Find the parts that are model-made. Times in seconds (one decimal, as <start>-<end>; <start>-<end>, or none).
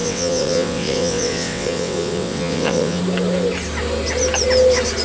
0.0-3.0